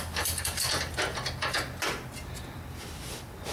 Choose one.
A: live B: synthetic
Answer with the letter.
A